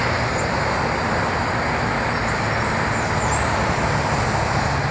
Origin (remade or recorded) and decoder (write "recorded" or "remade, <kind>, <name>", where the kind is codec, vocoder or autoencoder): recorded